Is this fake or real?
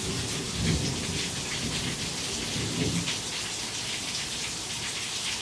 real